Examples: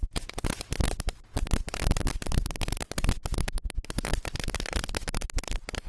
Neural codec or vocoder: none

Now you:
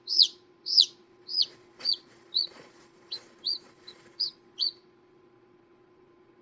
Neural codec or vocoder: vocoder, Vocos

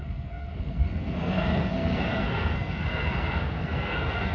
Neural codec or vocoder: codec, SNAC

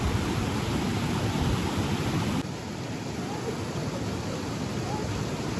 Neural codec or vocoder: none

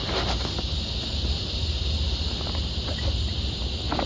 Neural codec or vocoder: none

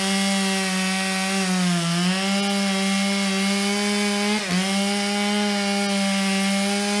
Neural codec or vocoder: none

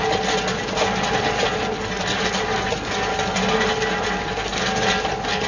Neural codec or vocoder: none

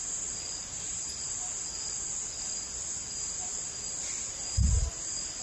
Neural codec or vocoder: vocoder, BigVGAN v2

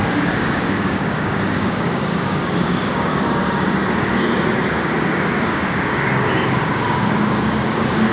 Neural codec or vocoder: codec, DAC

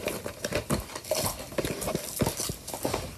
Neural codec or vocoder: none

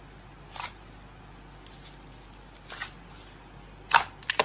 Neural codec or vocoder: none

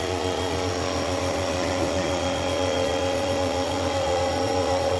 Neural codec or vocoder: vocoder, Vocos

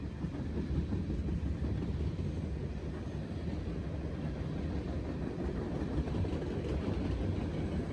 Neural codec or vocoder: none